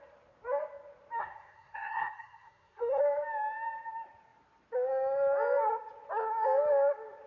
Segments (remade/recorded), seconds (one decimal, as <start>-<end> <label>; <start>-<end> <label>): 0.0-1.2 recorded; 1.2-3.0 remade; 3.0-7.3 recorded